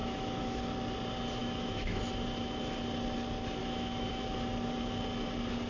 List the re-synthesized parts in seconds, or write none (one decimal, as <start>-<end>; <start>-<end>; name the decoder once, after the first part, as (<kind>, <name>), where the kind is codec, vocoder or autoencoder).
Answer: 0.0-0.6 (autoencoder, DAC-VAE); 1.4-2.0; 3.6-4.1